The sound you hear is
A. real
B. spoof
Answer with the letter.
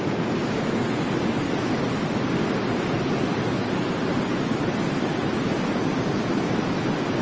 A